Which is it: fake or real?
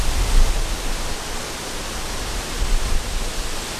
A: real